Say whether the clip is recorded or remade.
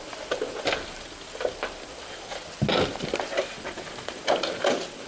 recorded